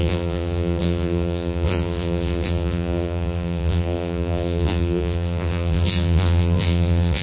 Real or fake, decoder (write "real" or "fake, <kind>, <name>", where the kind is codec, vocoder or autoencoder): fake, vocoder, BigVGAN v2